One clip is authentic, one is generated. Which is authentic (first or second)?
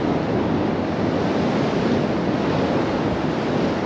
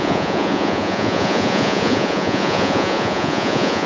first